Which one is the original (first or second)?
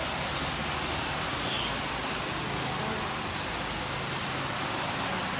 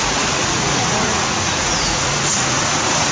first